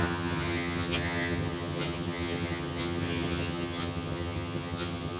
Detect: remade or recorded remade